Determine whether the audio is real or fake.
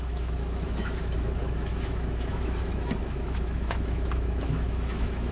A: fake